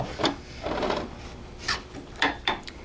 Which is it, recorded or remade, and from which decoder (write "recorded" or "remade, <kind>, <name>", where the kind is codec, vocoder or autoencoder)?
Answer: remade, vocoder, BigVGAN v2